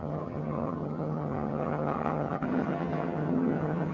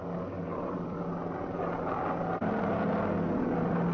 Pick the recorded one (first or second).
second